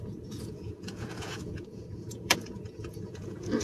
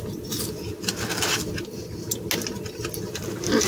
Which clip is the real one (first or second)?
second